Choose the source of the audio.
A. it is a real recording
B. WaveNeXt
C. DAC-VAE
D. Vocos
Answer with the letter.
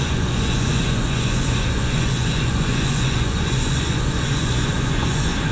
D